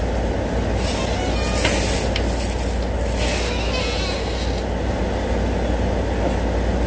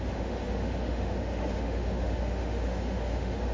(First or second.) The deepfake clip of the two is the second